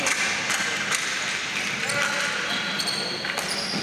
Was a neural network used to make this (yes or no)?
no